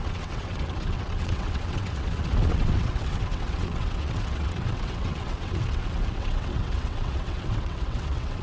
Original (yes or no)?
no